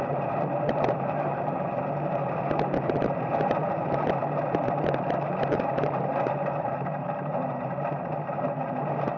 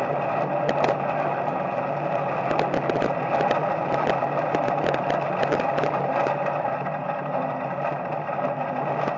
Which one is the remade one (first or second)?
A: first